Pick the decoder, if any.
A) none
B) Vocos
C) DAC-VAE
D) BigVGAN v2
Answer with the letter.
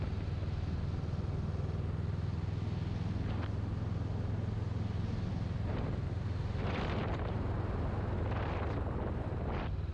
A